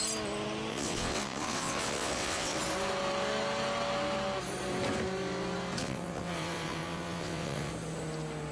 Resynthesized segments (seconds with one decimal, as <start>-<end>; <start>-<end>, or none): 0.7-2.6; 5.8-7.7